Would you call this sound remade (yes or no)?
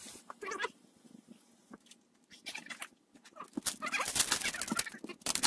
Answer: no